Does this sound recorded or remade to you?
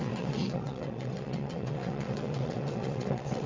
remade